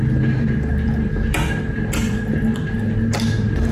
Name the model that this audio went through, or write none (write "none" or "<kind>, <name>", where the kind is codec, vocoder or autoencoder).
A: none